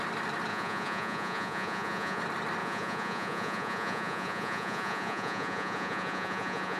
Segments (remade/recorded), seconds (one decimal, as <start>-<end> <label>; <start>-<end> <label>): 0.0-0.5 recorded; 0.5-2.2 remade; 2.2-2.6 recorded; 2.6-6.8 remade